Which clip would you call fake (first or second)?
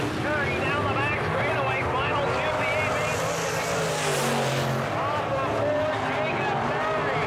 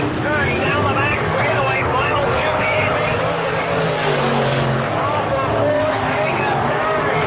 second